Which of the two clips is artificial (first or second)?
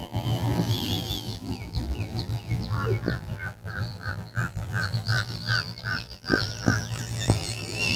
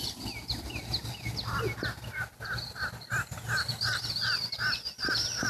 first